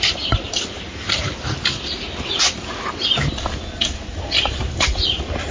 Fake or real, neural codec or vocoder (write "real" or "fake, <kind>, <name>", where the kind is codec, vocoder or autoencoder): real